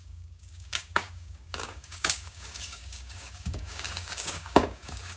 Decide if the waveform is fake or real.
fake